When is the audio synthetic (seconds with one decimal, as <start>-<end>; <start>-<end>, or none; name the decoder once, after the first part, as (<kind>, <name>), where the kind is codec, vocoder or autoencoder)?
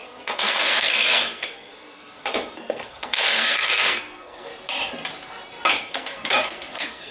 0.0-4.5 (codec, SNAC); 5.7-7.1